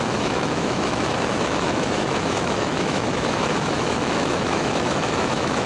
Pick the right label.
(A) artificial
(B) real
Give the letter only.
A